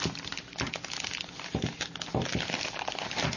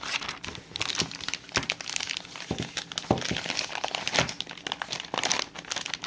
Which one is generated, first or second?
first